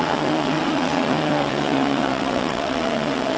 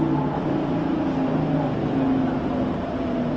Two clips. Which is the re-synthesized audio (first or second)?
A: first